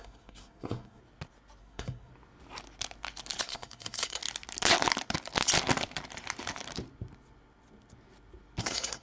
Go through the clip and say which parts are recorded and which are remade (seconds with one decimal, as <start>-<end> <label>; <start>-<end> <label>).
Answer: 0.0-1.0 remade; 1.0-1.6 recorded; 1.6-2.1 remade; 2.1-3.4 recorded; 3.4-4.2 remade; 4.2-8.6 recorded; 8.6-9.0 remade